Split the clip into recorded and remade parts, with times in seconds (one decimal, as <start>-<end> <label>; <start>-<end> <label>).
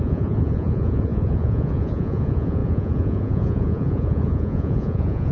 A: 0.0-5.3 remade